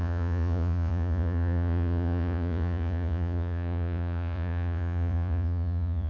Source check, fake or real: fake